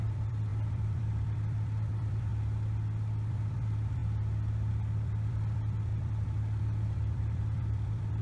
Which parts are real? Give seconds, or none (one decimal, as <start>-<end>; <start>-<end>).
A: 2.3-3.3; 4.0-4.7